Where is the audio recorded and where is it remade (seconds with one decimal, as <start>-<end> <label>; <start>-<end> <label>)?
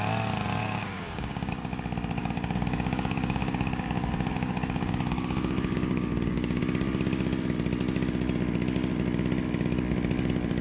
0.0-0.6 recorded; 0.6-1.5 remade; 1.5-2.2 recorded; 2.2-6.6 remade; 6.6-10.6 recorded